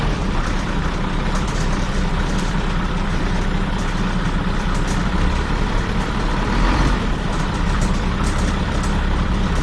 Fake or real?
fake